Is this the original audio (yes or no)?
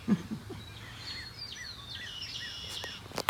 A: yes